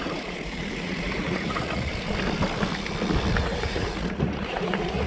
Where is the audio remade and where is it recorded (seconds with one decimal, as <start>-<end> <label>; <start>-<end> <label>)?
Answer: 0.0-1.9 remade; 1.9-3.4 recorded; 3.4-5.1 remade